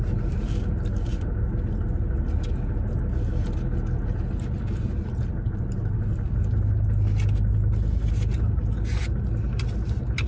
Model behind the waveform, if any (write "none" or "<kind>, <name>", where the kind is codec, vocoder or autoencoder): none